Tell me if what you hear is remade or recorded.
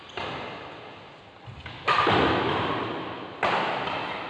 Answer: recorded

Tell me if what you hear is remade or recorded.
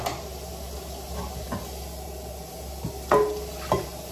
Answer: recorded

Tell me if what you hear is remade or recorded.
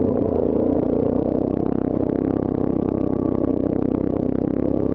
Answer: remade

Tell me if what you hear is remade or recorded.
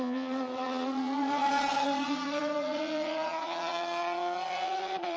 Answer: remade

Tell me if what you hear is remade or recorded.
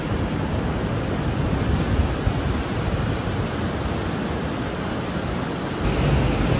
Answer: recorded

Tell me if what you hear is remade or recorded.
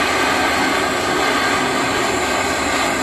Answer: recorded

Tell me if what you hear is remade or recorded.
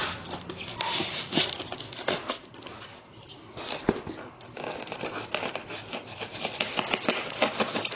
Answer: recorded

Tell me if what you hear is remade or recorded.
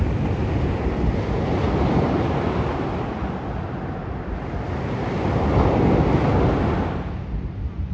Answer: recorded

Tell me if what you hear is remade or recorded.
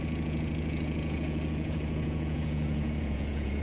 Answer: remade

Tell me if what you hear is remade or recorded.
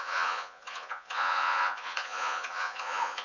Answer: remade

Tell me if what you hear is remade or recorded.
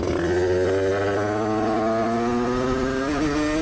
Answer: recorded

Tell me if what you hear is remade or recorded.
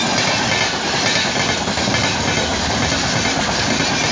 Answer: recorded